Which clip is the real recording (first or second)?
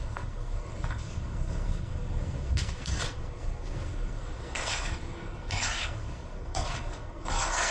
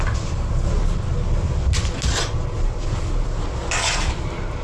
second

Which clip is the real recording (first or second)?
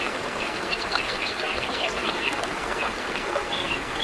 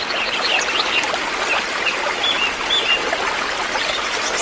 second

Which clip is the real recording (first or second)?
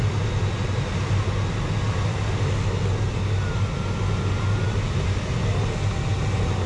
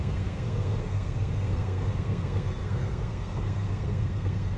first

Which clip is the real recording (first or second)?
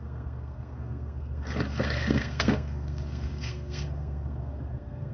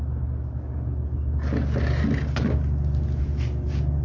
second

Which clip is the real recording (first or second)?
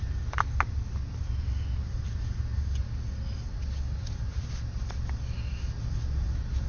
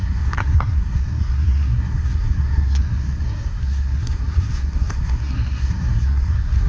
first